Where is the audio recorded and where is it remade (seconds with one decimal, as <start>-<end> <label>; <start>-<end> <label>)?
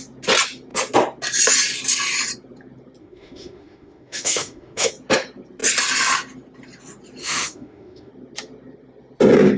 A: 0.0-3.0 recorded; 3.0-4.9 remade; 4.9-7.2 recorded; 7.2-8.1 remade; 8.1-9.6 recorded